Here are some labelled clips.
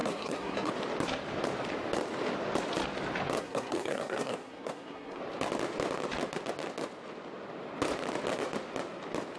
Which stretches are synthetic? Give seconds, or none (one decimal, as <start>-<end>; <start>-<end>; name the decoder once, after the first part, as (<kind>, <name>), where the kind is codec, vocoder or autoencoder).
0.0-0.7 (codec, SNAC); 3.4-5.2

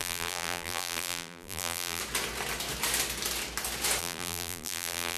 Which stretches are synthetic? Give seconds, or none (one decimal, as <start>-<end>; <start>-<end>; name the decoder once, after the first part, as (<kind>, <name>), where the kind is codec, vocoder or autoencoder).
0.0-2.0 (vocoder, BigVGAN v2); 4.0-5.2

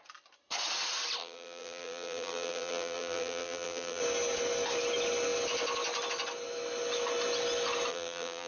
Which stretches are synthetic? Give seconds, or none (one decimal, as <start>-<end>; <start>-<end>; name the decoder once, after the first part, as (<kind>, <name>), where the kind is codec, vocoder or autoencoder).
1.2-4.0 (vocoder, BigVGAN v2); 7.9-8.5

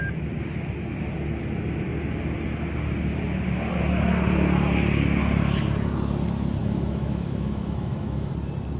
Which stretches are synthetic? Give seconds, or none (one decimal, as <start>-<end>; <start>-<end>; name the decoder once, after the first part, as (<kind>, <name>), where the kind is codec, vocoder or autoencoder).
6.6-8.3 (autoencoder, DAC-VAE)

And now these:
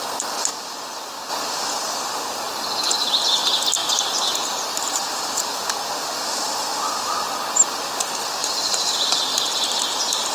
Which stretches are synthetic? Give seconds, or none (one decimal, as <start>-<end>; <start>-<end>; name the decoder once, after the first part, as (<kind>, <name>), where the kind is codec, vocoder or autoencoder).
3.8-5.5 (vocoder, BigVGAN v2); 8.4-10.3

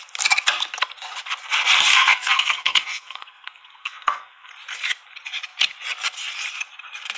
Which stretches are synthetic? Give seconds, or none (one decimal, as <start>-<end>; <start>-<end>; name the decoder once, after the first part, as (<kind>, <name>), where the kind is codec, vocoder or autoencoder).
1.9-4.5 (codec, SNAC)

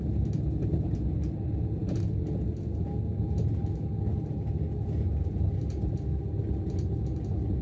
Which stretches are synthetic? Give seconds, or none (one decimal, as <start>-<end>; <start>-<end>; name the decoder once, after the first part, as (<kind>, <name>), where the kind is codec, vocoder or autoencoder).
none